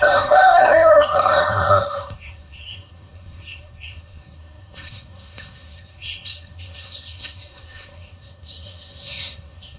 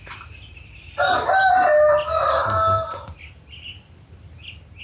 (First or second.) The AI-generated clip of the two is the first